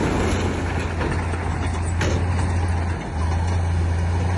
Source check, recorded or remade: recorded